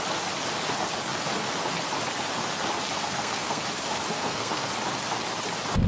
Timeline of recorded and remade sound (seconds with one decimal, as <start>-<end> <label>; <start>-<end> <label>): 0.0-3.0 recorded; 3.0-3.6 remade; 3.6-4.1 recorded; 4.1-4.7 remade; 4.7-5.9 recorded